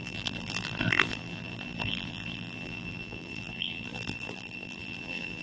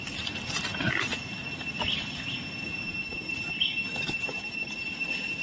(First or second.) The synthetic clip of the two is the first